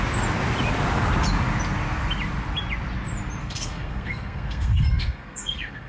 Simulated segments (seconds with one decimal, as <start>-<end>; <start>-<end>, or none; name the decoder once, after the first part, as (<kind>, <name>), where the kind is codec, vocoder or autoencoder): 3.4-5.9 (codec, SNAC)